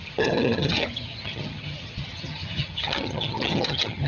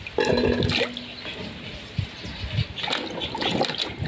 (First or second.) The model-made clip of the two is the first